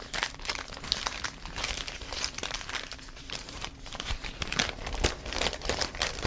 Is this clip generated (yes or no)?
yes